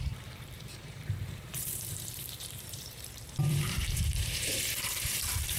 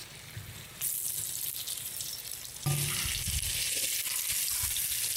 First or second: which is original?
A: second